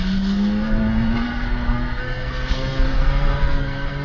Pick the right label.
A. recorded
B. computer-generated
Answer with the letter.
B